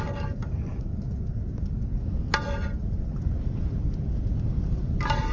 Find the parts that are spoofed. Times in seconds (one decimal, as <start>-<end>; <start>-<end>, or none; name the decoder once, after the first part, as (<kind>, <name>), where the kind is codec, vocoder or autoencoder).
none